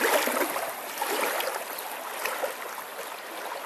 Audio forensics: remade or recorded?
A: recorded